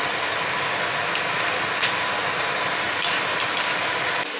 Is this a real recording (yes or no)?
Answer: yes